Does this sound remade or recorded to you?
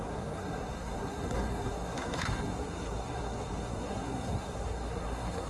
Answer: remade